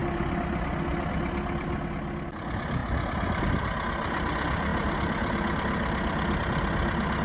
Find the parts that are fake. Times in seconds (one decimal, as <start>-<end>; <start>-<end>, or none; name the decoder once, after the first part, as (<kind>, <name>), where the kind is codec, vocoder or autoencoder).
none